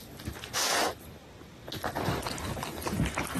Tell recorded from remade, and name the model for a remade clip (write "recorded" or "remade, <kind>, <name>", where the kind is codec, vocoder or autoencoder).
recorded